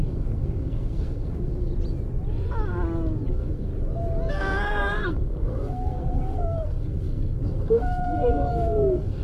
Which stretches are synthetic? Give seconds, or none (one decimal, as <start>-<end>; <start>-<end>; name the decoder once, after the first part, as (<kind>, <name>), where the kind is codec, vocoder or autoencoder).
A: 0.0-1.7 (codec, SNAC); 3.3-3.7; 4.3-9.2